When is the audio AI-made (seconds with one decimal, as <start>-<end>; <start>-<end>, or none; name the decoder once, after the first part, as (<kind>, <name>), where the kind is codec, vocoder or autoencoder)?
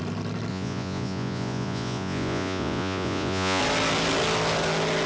0.5-3.6 (vocoder, Vocos)